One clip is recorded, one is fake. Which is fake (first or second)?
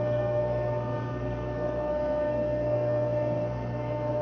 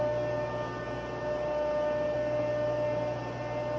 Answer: first